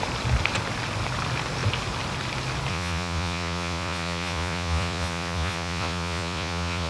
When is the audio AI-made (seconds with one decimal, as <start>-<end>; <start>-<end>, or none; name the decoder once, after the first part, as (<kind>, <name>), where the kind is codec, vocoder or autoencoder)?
2.7-6.9 (vocoder, Vocos)